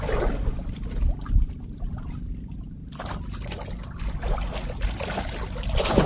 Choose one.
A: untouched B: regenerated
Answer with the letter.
A